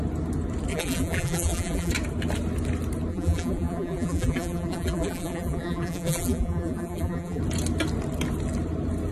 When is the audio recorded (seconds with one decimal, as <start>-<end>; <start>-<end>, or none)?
0.0-0.7; 1.9-3.1; 7.4-9.1